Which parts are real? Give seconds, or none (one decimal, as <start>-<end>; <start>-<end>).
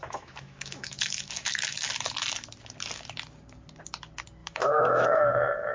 1.9-4.4; 5.2-5.7